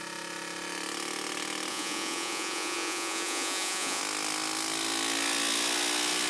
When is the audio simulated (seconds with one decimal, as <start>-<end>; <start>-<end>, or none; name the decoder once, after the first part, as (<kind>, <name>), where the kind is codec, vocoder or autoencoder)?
1.7-4.0 (vocoder, Vocos)